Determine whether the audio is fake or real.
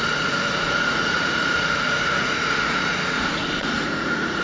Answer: fake